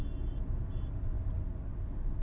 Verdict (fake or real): real